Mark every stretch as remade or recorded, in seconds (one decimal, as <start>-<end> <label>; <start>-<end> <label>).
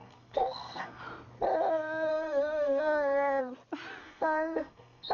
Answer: 0.0-1.0 remade; 1.0-2.1 recorded; 2.1-3.4 remade; 3.4-4.0 recorded; 4.0-5.1 remade